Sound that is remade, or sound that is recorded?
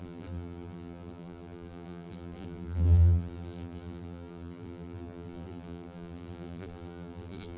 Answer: remade